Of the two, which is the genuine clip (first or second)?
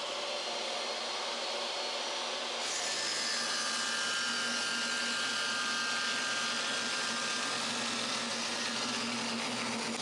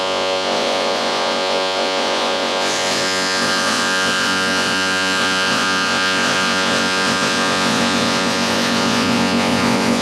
first